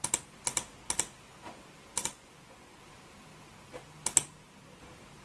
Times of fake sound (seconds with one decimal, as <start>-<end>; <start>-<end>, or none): 2.0-2.8